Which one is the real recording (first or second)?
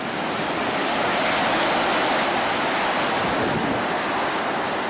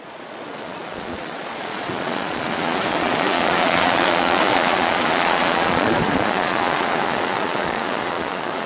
first